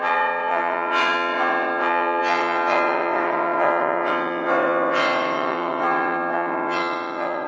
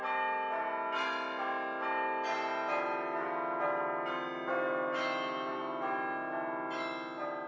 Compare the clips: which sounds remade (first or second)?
first